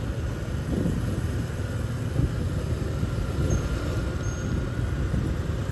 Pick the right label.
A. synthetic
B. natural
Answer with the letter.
B